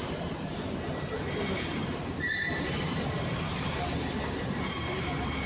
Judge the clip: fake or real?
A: fake